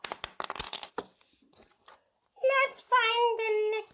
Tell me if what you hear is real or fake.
real